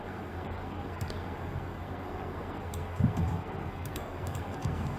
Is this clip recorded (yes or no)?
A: no